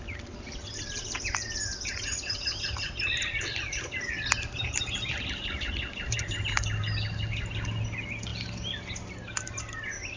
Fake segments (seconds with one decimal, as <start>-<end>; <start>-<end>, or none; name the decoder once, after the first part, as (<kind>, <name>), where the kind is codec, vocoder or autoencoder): none